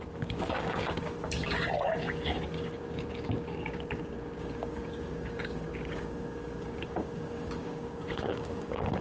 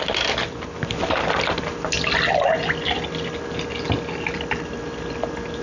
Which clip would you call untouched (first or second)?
second